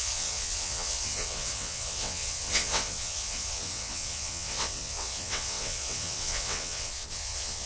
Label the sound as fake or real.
fake